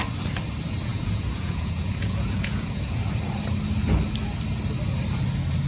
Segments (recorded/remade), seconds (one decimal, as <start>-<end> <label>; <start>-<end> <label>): 0.0-0.9 recorded; 0.9-3.0 remade; 3.0-5.7 recorded